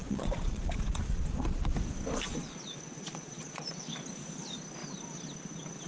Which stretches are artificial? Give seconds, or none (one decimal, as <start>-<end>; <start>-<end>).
0.0-1.7; 2.3-3.7